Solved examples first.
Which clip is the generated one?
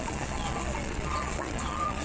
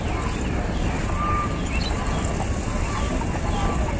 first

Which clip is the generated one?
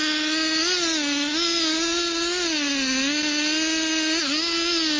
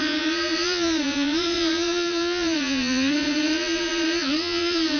second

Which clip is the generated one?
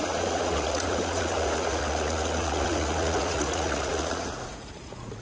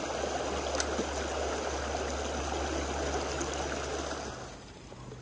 first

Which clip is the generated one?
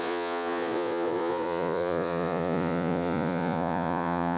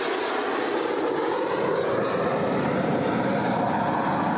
first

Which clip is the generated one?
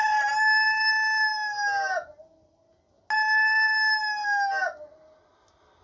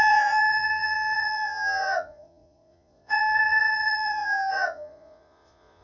second